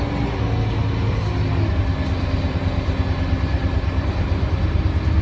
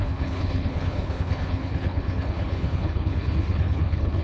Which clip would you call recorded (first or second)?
first